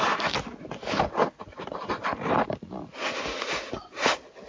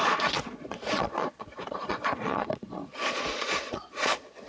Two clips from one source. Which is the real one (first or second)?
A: first